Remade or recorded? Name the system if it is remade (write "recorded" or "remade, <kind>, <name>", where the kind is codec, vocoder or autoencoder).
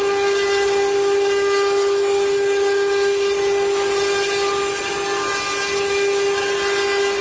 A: recorded